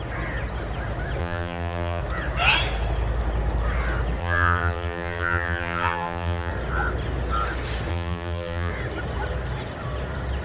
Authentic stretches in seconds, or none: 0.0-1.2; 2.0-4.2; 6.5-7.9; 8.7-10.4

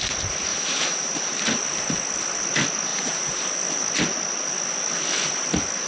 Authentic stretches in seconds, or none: 0.0-0.5; 1.3-2.9; 3.4-5.9

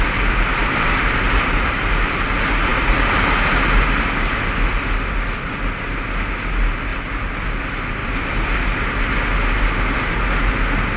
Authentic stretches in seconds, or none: 0.0-0.6; 1.7-8.0; 9.1-11.0